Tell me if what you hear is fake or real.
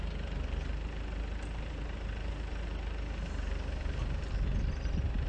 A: real